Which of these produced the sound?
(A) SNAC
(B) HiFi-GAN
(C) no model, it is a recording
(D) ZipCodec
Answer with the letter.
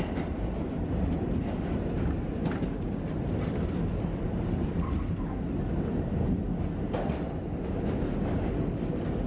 C